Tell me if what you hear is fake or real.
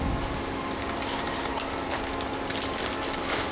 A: real